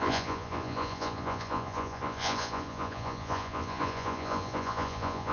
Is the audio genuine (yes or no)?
no